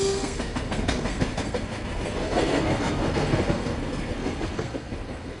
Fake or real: fake